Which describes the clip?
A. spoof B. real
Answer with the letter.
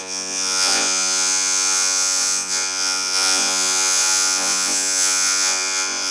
A